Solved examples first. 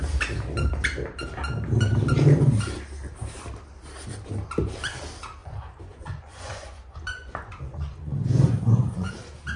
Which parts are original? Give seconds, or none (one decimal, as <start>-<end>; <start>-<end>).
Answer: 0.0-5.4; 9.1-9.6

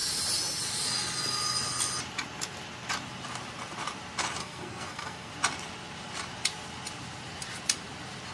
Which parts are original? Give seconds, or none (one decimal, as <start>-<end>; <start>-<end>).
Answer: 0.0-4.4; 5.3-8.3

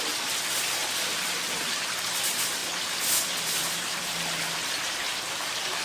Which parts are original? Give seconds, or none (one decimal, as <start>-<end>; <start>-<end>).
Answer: 0.0-5.8

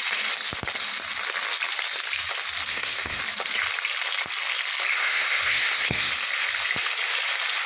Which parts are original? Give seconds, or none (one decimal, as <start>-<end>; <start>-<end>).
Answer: 0.0-2.7; 3.2-5.0; 6.1-7.7